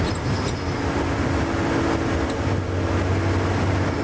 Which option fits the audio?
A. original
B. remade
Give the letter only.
A